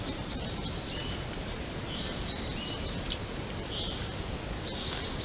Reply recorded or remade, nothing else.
remade